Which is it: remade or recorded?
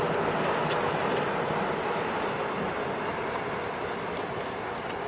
recorded